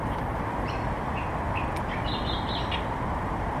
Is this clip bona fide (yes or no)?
yes